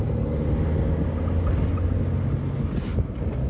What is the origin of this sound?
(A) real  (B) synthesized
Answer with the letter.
A